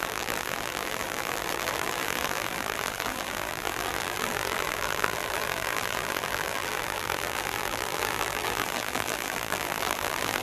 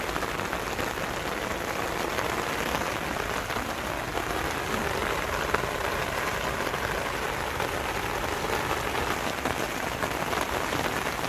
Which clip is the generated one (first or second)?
first